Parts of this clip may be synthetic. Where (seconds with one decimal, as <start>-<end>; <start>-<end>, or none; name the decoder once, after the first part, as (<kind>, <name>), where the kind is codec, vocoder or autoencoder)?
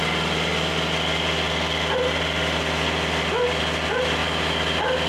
none